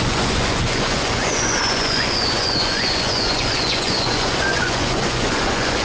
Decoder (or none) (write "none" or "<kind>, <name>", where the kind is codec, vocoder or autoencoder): vocoder, Vocos